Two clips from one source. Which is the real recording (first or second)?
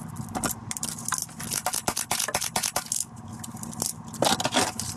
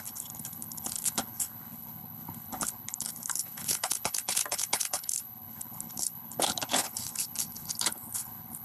first